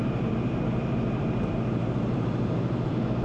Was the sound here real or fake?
fake